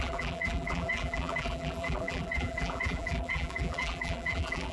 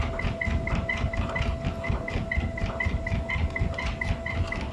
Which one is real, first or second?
second